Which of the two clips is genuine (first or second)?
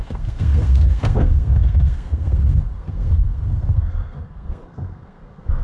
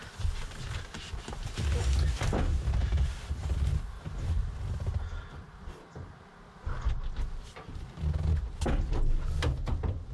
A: second